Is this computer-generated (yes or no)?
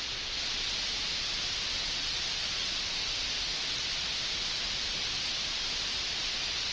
no